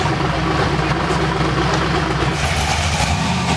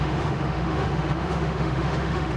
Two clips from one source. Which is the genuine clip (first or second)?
first